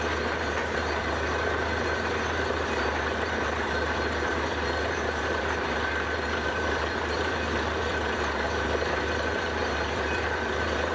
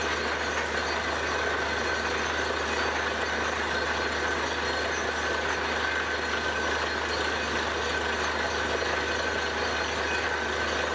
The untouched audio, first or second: second